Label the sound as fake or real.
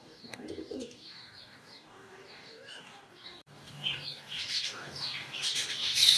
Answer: fake